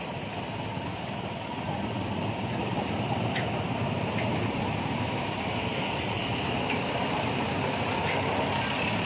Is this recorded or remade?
remade